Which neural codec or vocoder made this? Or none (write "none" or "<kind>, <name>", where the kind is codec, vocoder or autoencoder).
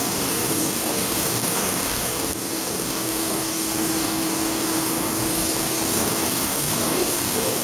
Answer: codec, DAC